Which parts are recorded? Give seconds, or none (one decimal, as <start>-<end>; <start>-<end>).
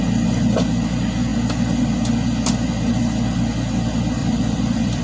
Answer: 0.0-4.2